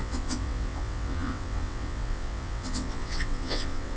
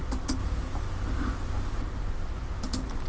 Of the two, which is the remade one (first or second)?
first